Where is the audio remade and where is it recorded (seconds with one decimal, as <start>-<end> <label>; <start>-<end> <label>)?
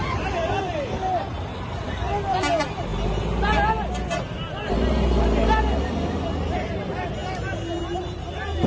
0.0-8.7 recorded